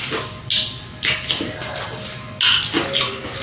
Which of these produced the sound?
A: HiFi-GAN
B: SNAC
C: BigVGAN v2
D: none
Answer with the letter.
D